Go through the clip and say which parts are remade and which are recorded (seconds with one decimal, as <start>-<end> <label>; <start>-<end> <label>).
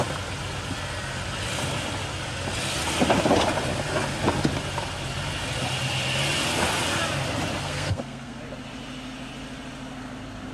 0.0-7.6 recorded; 7.6-8.4 remade; 8.4-10.5 recorded